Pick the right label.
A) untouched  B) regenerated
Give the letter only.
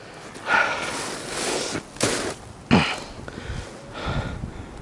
A